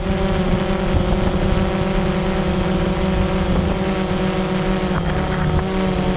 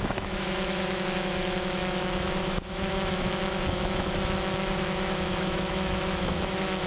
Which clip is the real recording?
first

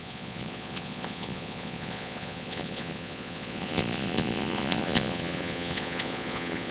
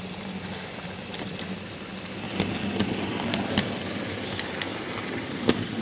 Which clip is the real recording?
second